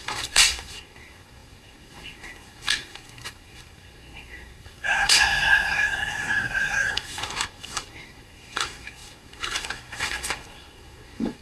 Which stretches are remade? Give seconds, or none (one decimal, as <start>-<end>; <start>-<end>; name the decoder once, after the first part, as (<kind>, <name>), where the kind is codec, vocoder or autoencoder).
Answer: 0.0-11.4 (codec, SNAC)